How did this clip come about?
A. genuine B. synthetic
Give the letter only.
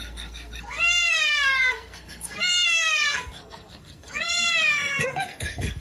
B